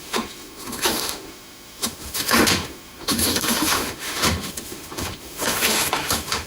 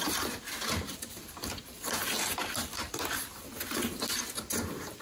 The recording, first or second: second